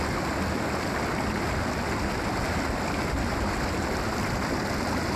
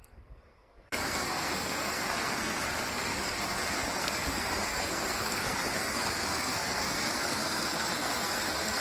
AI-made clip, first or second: second